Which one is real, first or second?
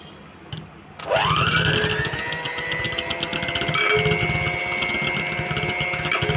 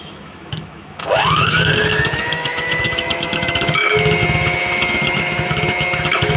first